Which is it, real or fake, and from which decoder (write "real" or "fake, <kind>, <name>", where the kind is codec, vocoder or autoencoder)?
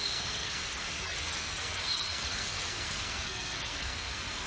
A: fake, codec, SNAC